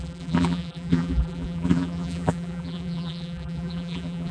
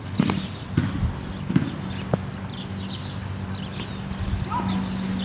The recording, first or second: second